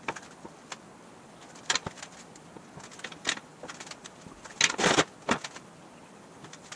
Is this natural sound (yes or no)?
yes